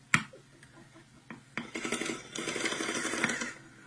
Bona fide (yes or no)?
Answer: yes